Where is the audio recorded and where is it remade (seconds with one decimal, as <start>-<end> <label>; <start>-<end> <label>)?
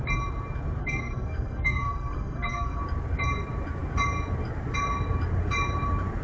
0.0-0.8 recorded; 0.8-2.8 remade; 2.8-6.2 recorded